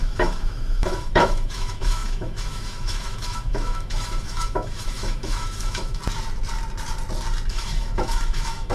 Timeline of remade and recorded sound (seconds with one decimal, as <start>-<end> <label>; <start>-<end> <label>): 0.0-6.0 remade; 6.0-7.5 recorded; 7.5-8.7 remade